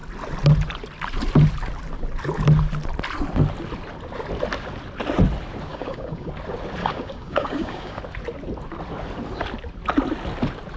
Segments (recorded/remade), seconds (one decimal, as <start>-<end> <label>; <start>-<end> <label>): 0.0-5.7 recorded; 5.7-6.3 remade; 6.3-6.8 recorded; 6.8-8.0 remade; 8.0-10.8 recorded